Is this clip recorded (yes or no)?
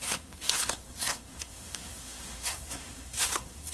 no